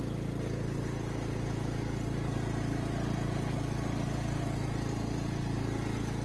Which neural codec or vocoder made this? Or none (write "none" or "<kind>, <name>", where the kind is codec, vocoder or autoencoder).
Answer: none